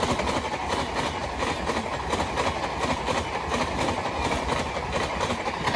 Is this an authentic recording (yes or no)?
yes